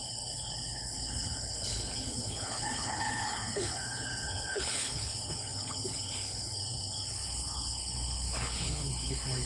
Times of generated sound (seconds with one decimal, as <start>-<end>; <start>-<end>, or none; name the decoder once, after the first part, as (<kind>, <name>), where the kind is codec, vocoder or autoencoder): 0.0-9.5 (codec, HILCodec)